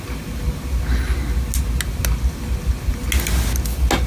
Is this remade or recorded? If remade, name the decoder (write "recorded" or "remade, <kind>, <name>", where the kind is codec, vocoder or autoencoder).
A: recorded